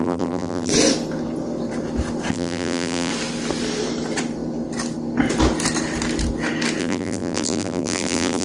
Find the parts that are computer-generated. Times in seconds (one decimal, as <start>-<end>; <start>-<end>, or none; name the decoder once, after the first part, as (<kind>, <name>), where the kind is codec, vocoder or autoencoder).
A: 0.0-0.7 (vocoder, BigVGAN v2); 2.3-3.1; 6.8-8.4